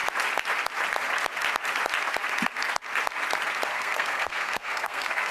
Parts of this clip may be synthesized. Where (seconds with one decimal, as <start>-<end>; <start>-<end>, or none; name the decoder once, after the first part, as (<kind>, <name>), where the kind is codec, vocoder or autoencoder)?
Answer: 3.7-5.3 (codec, SNAC)